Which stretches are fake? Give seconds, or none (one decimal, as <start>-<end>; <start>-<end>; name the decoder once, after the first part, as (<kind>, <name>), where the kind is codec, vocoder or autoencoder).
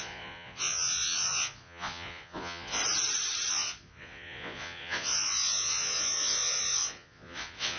0.0-2.8 (vocoder, Vocos); 3.5-7.8